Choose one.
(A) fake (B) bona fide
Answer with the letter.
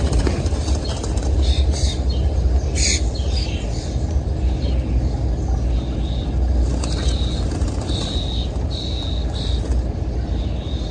B